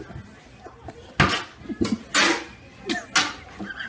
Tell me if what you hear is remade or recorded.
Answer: recorded